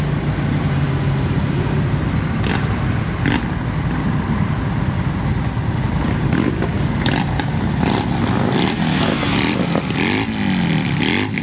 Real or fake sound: real